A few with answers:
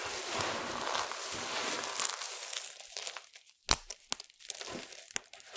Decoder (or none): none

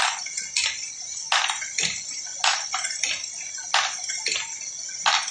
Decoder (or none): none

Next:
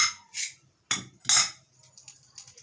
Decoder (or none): none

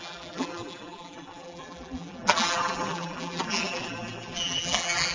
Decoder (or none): vocoder, BigVGAN v2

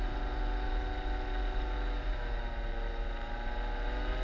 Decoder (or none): vocoder, BigVGAN v2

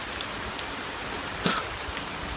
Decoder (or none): vocoder, BigVGAN v2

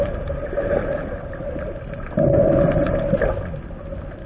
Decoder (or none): none